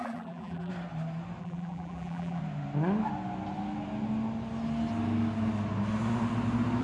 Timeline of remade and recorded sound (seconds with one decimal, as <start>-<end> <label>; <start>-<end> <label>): 0.0-0.7 remade; 0.7-1.4 recorded; 1.4-2.4 remade; 2.4-6.8 recorded